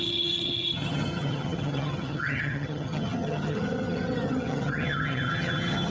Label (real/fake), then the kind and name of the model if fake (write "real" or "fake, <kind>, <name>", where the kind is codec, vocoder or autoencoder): fake, vocoder, HiFi-GAN